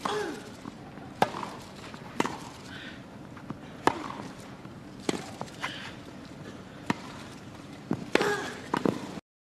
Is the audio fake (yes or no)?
yes